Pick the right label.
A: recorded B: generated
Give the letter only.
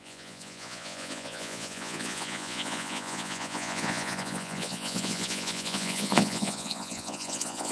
B